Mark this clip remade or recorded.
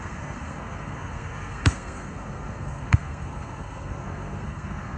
remade